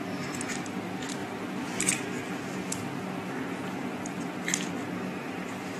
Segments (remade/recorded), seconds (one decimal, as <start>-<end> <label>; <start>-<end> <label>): 0.0-5.8 recorded